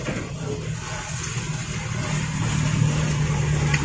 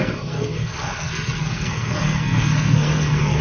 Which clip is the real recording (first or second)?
first